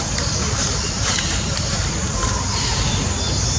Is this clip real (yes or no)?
no